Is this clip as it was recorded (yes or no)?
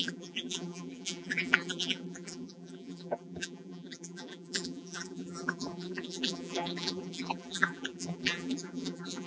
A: no